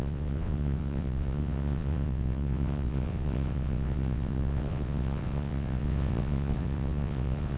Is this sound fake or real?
fake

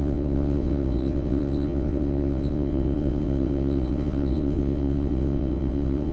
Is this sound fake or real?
fake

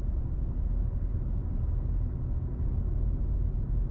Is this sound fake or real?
real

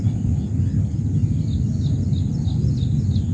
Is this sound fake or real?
real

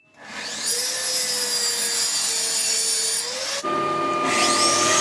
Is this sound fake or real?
real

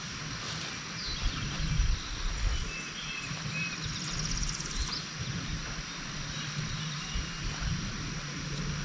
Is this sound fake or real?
real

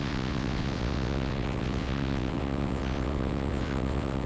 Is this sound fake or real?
fake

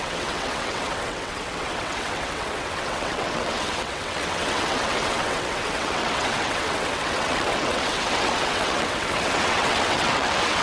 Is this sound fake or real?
fake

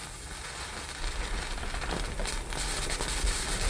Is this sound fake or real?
real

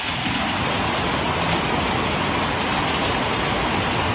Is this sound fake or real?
real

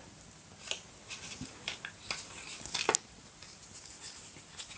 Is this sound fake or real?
real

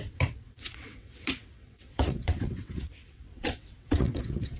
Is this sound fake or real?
fake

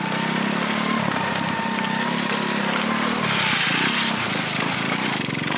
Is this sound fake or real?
real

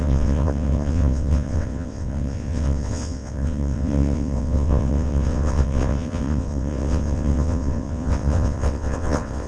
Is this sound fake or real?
fake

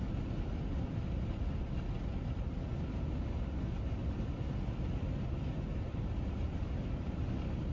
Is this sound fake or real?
real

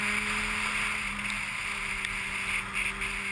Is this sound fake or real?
real